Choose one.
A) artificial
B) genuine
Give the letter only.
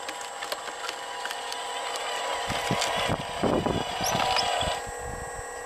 B